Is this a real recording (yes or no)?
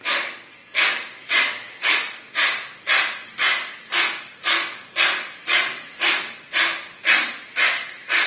yes